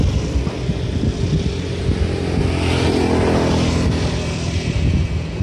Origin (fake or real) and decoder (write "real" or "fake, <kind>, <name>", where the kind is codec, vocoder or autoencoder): real